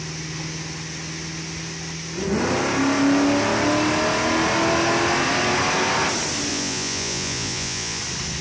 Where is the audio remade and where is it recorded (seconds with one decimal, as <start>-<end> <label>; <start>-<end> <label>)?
0.0-6.5 recorded; 6.5-8.0 remade; 8.0-8.4 recorded